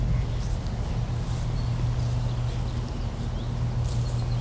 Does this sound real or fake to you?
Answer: real